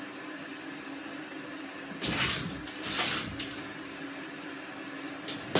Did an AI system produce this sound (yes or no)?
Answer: no